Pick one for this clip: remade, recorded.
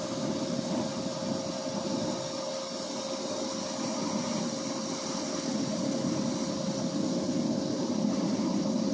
recorded